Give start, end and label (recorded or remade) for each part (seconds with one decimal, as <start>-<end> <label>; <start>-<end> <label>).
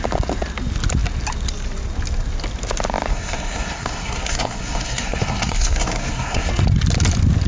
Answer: 0.0-3.1 recorded; 3.1-6.5 remade; 6.5-7.5 recorded